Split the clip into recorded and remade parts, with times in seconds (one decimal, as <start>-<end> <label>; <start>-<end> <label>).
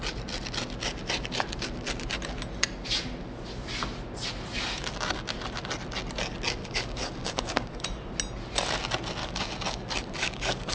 0.0-6.6 recorded; 6.6-7.8 remade; 7.8-9.2 recorded; 9.2-10.7 remade